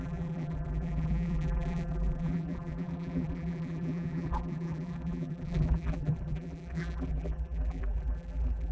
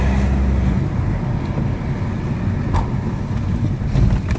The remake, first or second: first